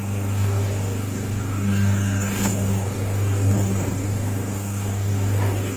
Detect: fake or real fake